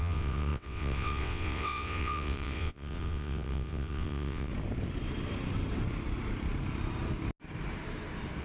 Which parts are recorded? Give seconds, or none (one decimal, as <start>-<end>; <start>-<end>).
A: 4.5-8.4